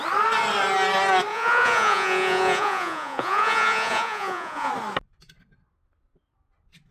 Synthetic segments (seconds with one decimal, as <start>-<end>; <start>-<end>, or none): 1.3-4.7